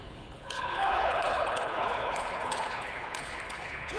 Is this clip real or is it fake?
fake